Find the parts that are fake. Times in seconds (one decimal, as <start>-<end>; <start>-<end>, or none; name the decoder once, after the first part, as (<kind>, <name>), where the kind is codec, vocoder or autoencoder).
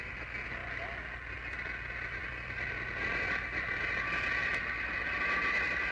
none